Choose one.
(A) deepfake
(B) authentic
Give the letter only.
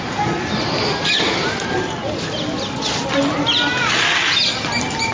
B